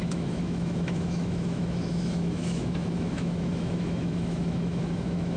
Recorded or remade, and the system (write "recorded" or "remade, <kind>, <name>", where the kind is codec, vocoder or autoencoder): remade, autoencoder, DAC-VAE